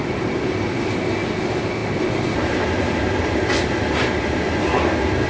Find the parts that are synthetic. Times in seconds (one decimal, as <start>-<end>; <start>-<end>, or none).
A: none